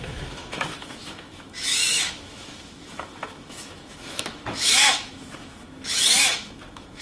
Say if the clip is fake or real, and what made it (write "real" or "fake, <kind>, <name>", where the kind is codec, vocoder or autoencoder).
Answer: fake, autoencoder, DAC-VAE